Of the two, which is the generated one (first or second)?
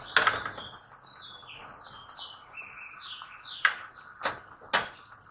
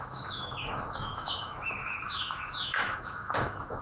second